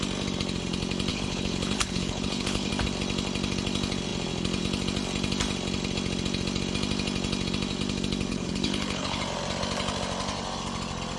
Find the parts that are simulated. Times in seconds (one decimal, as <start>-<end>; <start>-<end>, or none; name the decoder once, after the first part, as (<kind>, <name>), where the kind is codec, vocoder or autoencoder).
1.1-2.7 (codec, HILCodec); 8.3-9.2